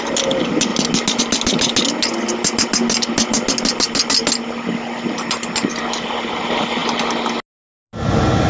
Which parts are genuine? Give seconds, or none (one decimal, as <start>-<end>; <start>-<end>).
0.0-8.5